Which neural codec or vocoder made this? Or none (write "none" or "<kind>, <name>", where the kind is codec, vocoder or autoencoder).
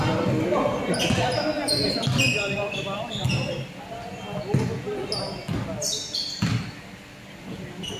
none